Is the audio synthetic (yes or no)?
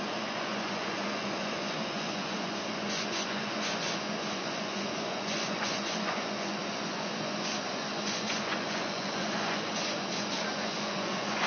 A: yes